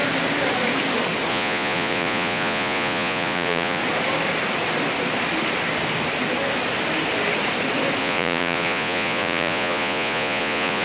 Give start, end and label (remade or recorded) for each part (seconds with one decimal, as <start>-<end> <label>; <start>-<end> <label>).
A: 0.0-1.3 recorded; 1.3-3.8 remade; 3.8-8.0 recorded; 8.0-10.8 remade

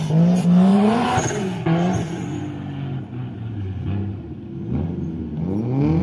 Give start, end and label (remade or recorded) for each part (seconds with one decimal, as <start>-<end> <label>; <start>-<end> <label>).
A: 0.0-0.7 recorded; 0.7-2.4 remade; 2.4-6.0 recorded

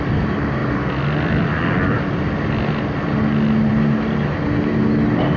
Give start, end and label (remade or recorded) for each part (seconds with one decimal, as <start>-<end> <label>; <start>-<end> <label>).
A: 0.0-5.4 recorded

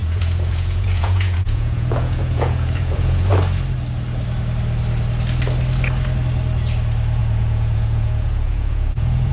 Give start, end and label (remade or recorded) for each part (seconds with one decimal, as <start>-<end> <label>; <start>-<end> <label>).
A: 0.0-3.3 remade; 3.3-7.2 recorded; 7.2-9.3 remade

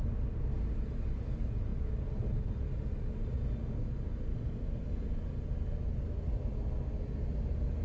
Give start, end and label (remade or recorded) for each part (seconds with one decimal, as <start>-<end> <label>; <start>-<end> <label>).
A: 0.0-7.8 recorded

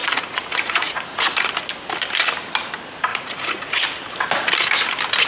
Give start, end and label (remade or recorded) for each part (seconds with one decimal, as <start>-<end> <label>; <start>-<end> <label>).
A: 0.0-1.5 remade; 1.5-3.1 recorded; 3.1-3.8 remade; 3.8-5.3 recorded

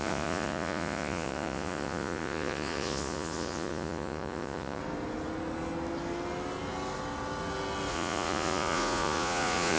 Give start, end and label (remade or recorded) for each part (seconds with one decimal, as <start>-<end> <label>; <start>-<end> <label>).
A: 0.0-4.8 remade; 4.8-7.9 recorded; 7.9-9.8 remade